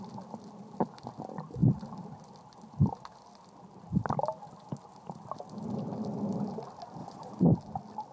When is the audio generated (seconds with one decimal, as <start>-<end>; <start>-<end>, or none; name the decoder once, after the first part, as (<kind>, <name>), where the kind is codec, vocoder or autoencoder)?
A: 7.0-7.5 (vocoder, Vocos)